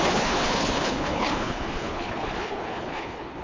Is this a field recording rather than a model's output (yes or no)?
no